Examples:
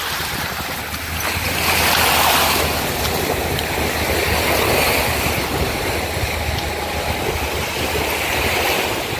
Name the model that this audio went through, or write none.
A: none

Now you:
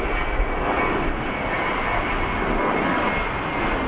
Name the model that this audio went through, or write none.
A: none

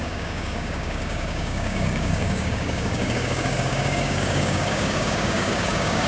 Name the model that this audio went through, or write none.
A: codec, DAC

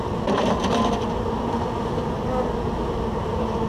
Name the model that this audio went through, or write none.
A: none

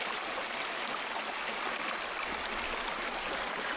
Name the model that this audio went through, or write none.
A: none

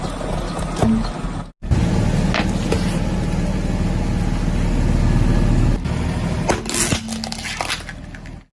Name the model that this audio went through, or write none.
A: none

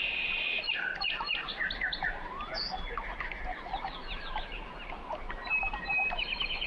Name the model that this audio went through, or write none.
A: none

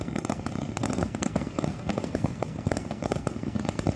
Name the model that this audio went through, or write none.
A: codec, SNAC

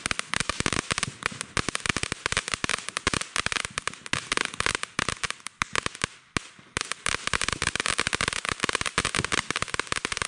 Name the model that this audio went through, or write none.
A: none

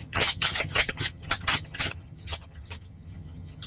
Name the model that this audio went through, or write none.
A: vocoder, HiFi-GAN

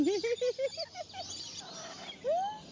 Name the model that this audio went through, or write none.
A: none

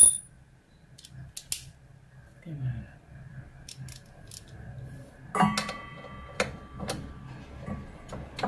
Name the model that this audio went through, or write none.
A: none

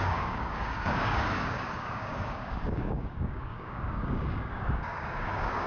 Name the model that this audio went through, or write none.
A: codec, DAC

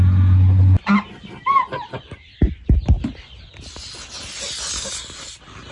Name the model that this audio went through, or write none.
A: none